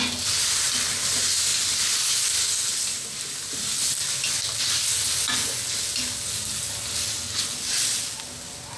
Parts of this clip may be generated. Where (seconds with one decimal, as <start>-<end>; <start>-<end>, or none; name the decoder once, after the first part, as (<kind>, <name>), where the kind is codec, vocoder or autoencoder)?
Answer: none